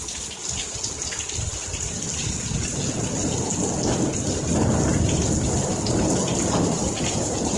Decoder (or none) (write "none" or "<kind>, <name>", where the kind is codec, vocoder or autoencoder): none